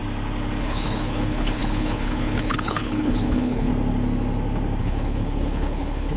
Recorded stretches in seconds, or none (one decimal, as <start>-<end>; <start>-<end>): 0.0-0.6; 3.7-4.8